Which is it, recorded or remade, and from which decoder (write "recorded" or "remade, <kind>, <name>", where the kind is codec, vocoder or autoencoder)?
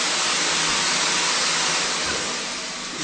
recorded